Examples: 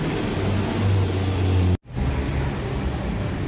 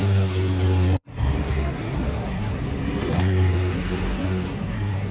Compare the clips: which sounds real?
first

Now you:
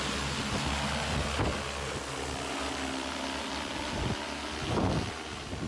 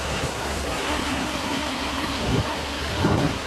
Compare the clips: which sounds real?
first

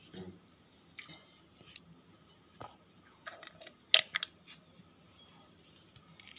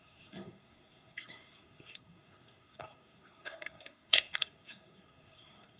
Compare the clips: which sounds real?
first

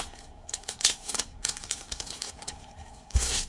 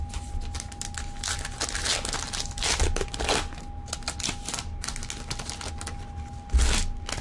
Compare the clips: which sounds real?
second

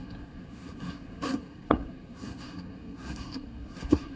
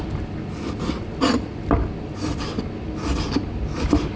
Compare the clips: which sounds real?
second